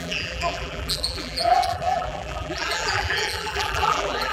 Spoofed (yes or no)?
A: yes